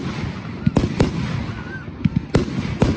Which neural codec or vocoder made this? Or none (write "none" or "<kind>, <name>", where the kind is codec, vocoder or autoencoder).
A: none